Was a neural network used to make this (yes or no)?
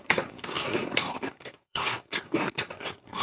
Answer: yes